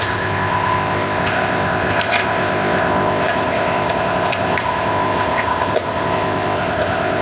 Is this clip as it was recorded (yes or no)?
no